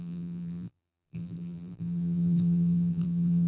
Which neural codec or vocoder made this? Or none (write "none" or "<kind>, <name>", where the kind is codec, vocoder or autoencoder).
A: vocoder, BigVGAN v2